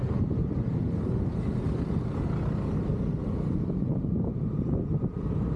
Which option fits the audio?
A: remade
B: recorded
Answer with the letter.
B